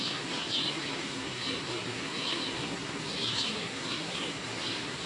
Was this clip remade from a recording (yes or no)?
yes